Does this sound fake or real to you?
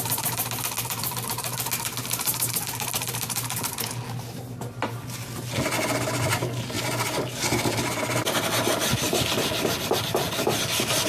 real